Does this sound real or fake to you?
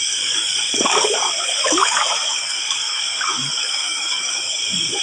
fake